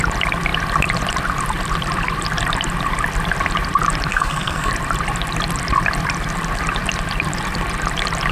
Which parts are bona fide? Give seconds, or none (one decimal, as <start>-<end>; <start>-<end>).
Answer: 0.0-4.1; 4.7-8.3